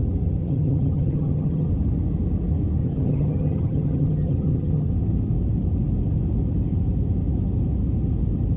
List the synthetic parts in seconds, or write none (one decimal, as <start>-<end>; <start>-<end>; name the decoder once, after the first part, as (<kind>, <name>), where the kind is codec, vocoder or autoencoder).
0.4-1.7 (vocoder, HiFi-GAN); 2.8-4.9